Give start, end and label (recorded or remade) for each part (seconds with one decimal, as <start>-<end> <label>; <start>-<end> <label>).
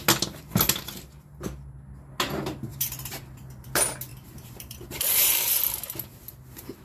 0.0-2.7 recorded; 2.7-3.6 remade; 3.6-4.1 recorded; 4.1-5.6 remade; 5.6-6.8 recorded